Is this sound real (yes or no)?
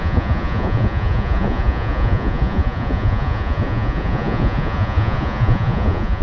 no